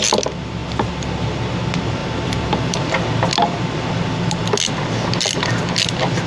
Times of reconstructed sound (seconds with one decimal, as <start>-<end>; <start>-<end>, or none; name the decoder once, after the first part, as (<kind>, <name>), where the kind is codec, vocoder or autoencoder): none